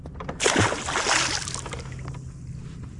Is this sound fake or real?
real